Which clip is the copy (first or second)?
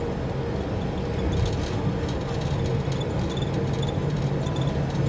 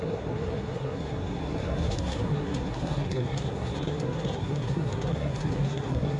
second